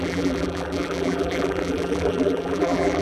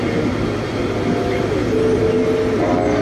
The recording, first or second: second